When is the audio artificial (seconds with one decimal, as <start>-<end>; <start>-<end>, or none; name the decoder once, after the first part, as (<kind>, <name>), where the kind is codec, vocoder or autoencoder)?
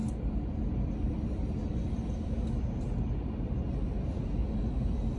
none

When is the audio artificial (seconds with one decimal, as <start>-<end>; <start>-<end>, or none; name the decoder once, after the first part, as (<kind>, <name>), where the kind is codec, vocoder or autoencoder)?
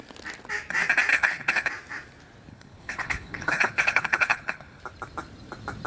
1.1-1.7 (codec, HILCodec); 2.5-4.8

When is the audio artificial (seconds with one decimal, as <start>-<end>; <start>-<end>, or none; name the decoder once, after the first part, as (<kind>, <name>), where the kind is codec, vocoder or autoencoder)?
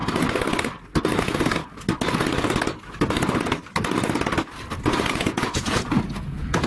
1.2-1.6 (vocoder, Vocos); 5.1-6.7